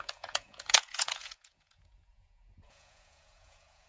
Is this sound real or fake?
fake